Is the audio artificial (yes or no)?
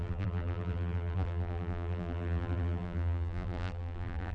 yes